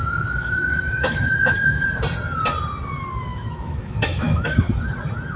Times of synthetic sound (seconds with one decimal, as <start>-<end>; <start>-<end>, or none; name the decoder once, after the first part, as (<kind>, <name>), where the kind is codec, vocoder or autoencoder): 0.0-1.8 (autoencoder, DAC-VAE); 3.3-4.7